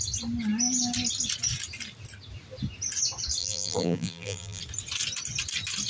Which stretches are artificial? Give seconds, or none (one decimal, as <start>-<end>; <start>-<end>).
3.4-4.6